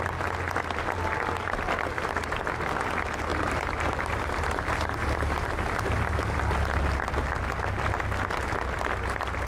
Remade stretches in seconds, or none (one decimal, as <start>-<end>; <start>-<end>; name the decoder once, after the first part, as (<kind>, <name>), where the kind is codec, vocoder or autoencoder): 3.3-5.5 (vocoder, BigVGAN v2)